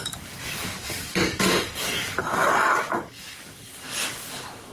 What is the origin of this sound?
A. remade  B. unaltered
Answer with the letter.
A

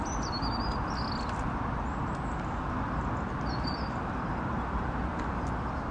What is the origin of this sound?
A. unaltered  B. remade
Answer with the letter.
A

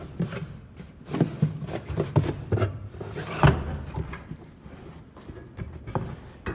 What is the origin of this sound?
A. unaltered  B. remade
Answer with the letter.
A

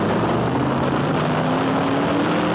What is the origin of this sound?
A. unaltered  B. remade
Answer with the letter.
A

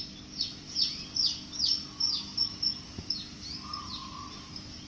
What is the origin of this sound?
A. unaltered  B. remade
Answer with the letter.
A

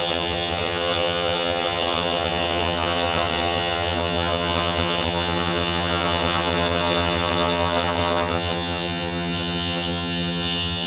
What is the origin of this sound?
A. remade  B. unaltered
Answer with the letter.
A